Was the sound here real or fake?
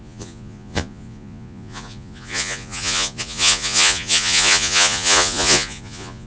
fake